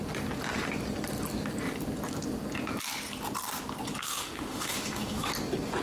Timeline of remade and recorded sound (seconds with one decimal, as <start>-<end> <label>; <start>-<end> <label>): 0.0-4.0 recorded; 4.0-5.3 remade; 5.3-5.8 recorded